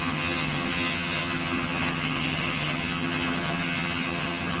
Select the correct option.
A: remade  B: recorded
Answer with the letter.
A